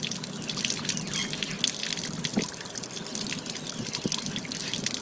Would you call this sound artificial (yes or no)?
no